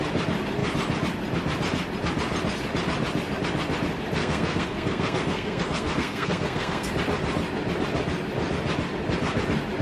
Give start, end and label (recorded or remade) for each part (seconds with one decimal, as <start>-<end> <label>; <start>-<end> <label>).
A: 0.0-4.2 recorded; 4.2-6.9 remade; 6.9-9.8 recorded